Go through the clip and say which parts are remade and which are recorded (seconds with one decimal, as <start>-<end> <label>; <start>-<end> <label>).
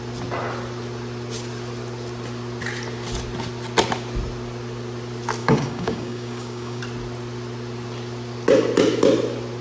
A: 0.0-5.4 recorded; 5.4-6.8 remade; 6.8-9.6 recorded